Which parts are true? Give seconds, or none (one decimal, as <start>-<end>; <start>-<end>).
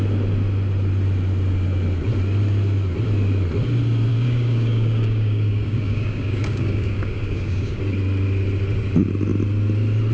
0.0-4.1; 7.8-10.1